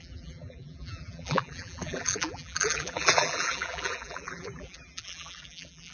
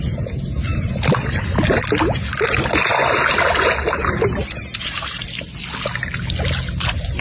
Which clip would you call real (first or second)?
second